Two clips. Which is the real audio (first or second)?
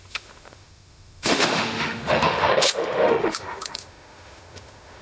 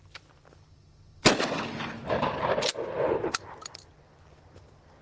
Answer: second